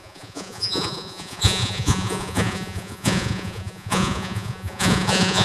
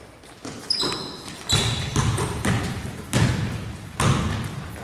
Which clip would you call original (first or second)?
second